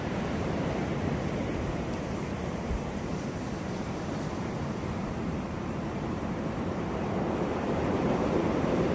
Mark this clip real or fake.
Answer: fake